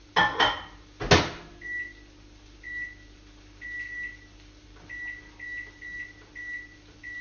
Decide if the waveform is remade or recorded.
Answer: recorded